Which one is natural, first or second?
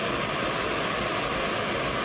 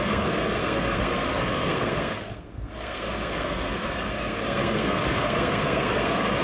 first